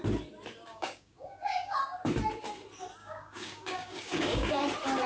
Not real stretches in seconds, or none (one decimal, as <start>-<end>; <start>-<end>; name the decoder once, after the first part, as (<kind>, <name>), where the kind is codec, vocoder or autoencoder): 0.7-1.8 (codec, DAC); 3.0-4.6